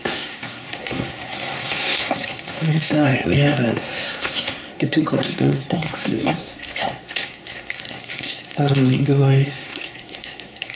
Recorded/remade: remade